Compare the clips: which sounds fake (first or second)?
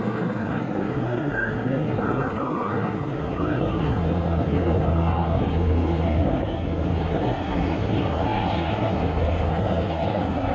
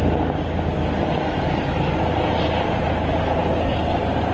first